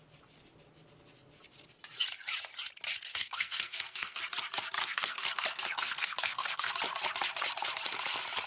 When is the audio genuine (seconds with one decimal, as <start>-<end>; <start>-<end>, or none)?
0.0-3.1; 4.2-4.8; 6.7-8.5